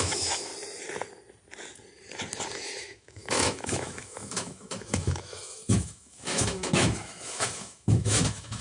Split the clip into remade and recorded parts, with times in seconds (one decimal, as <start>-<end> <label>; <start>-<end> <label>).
0.0-0.5 remade; 0.5-2.8 recorded; 2.8-8.6 remade